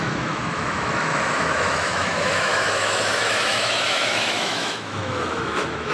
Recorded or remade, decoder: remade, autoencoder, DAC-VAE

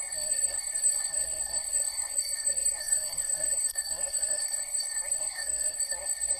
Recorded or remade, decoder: remade, codec, SNAC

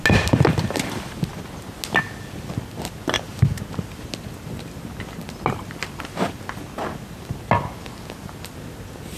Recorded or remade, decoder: recorded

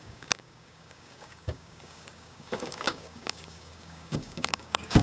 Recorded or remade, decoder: remade, codec, DAC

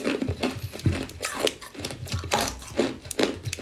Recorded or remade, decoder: remade, vocoder, BigVGAN v2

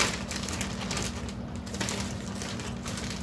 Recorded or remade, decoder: recorded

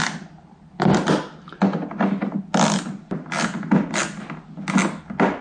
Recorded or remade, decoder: recorded